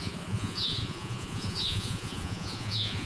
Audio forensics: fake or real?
fake